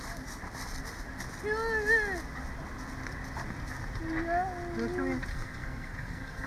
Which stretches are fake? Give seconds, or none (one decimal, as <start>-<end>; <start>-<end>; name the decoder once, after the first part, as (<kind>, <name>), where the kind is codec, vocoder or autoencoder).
5.3-6.5 (codec, SNAC)

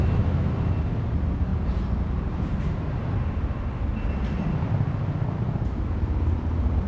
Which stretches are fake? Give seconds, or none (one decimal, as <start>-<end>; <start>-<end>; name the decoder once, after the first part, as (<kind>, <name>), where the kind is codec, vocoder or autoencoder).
none